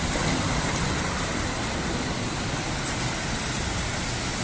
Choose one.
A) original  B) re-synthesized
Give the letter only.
A